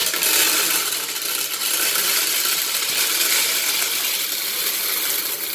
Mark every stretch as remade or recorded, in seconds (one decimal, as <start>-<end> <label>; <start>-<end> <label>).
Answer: 0.0-5.5 recorded